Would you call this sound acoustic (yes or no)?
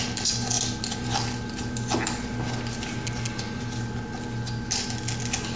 yes